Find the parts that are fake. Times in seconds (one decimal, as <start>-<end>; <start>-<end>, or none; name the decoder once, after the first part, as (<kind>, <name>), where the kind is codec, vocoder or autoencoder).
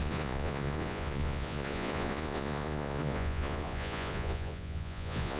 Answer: 0.0-5.4 (vocoder, Vocos)